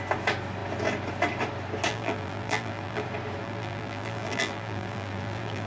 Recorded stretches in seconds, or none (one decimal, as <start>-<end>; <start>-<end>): 0.0-1.9; 3.0-3.4